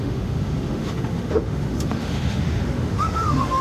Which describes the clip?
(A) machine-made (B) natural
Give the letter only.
A